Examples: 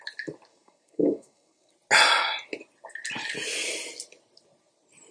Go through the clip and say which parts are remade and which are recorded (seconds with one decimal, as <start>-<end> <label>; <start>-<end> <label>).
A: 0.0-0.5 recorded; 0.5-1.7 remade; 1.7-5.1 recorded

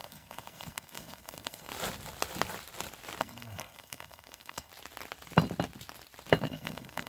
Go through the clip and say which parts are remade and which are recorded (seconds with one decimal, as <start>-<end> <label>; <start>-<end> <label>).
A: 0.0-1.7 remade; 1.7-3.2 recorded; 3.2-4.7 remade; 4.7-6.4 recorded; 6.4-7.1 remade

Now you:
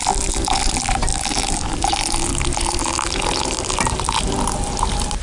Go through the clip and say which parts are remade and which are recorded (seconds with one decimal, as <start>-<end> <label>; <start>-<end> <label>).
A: 0.0-5.2 recorded

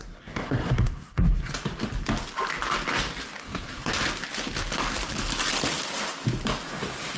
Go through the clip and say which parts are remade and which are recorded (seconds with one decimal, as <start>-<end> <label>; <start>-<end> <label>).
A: 0.0-1.5 remade; 1.5-3.4 recorded; 3.4-3.9 remade; 3.9-7.2 recorded